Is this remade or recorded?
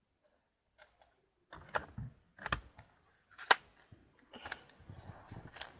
recorded